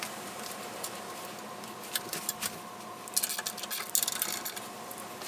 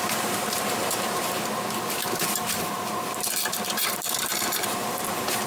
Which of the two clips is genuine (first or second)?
first